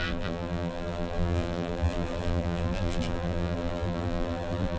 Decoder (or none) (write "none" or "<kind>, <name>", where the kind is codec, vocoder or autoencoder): vocoder, BigVGAN v2